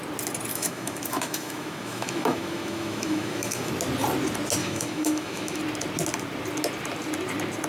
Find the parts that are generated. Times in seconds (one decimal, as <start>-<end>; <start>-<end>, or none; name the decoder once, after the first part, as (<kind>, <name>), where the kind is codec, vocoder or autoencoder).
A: 0.5-3.7 (autoencoder, DAC-VAE); 4.6-5.6